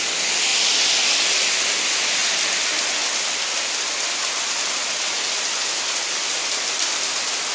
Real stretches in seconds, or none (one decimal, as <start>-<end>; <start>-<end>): 0.5-1.6